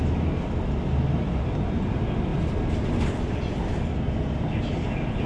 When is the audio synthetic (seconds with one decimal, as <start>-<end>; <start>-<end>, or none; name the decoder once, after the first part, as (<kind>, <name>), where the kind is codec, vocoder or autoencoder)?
none